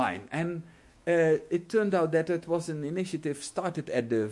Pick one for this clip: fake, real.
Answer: fake